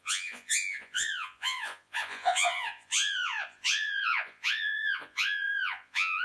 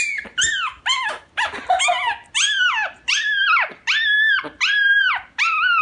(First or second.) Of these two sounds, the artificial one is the first